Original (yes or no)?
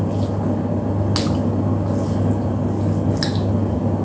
yes